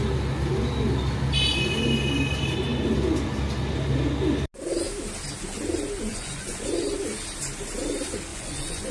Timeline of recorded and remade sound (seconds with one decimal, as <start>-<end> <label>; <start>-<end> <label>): 0.0-6.1 recorded; 6.1-6.7 remade; 6.7-8.3 recorded; 8.3-8.9 remade